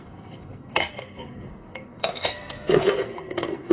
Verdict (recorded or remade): remade